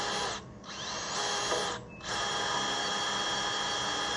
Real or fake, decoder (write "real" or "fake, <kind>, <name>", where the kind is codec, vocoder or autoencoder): real